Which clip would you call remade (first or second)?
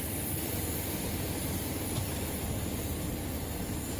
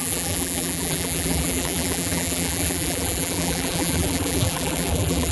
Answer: second